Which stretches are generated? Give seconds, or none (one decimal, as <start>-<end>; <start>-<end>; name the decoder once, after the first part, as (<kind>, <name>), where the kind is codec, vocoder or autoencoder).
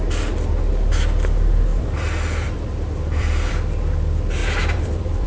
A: 1.7-3.5 (vocoder, BigVGAN v2); 4.4-5.3